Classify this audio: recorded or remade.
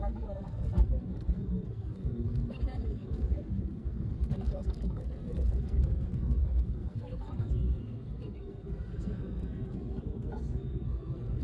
remade